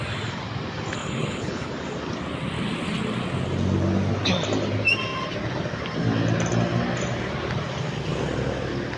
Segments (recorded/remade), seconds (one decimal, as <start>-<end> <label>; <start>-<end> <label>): 0.0-1.0 recorded; 1.0-1.7 remade; 1.7-9.0 recorded

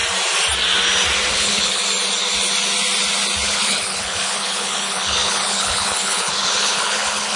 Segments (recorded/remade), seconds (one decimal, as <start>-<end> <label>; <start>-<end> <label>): 0.0-1.3 recorded; 1.3-1.8 remade; 1.8-3.5 recorded; 3.5-7.4 remade

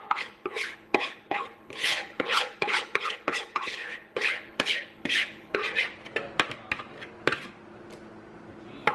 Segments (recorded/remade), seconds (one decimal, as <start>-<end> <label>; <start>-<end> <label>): 0.0-5.6 remade; 5.6-8.9 recorded

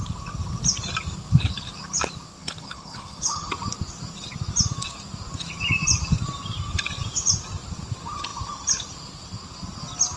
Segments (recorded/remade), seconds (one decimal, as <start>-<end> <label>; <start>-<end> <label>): 0.0-2.4 recorded; 2.4-3.5 remade; 3.5-10.2 recorded

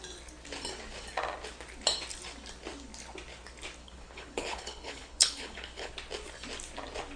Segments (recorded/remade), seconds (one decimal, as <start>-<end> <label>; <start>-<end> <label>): 0.0-3.8 recorded; 3.8-5.9 remade; 5.9-7.2 recorded